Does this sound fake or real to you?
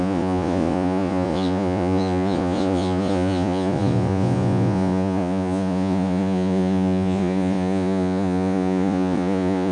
fake